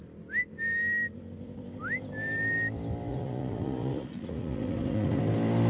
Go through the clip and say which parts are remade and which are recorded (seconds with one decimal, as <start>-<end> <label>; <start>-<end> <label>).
0.0-3.1 recorded; 3.1-5.2 remade; 5.2-5.7 recorded